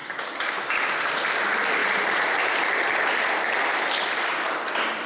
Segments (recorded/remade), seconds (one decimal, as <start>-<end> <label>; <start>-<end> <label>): 0.0-1.1 remade; 1.1-1.8 recorded; 1.8-2.6 remade; 2.6-5.1 recorded